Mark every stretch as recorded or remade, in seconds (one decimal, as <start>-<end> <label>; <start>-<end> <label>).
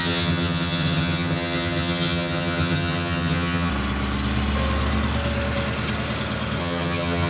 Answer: 0.0-3.7 remade; 3.7-6.6 recorded; 6.6-7.3 remade